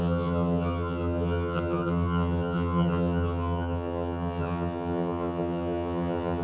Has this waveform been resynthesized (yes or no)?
yes